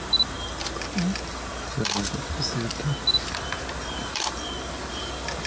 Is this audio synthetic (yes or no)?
no